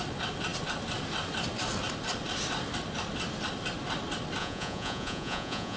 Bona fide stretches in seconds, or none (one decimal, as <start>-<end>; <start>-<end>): 0.0-4.4

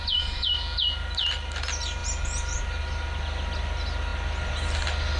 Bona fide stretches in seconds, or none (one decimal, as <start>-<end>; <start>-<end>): 0.0-5.2

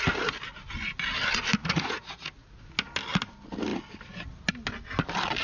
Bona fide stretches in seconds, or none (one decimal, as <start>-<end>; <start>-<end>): 0.0-1.6; 2.7-5.4

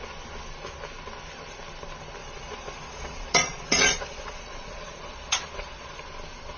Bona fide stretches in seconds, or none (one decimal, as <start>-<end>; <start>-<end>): 0.0-2.2; 6.0-6.6

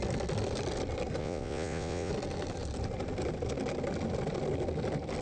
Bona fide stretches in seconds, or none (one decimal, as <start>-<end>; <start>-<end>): 0.0-1.2; 2.1-5.2

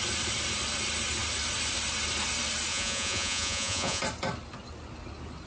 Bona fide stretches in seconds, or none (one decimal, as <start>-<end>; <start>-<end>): 0.0-2.7; 4.0-5.5

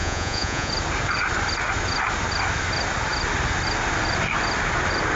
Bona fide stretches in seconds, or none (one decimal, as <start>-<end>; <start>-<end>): 0.7-5.2

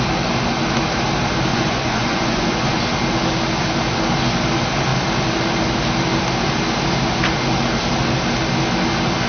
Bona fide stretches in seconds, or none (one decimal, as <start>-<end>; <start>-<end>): 0.0-1.5; 2.8-9.3